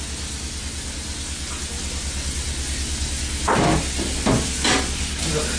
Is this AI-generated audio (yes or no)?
no